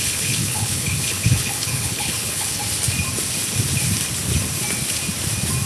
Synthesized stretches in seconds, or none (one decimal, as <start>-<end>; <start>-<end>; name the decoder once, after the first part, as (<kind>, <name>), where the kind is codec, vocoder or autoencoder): 0.0-2.6 (codec, HILCodec)